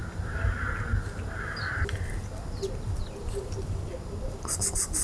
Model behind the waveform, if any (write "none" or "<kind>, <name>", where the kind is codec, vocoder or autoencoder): none